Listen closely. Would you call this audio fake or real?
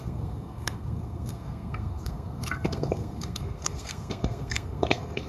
fake